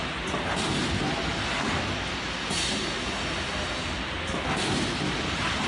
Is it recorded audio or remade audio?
recorded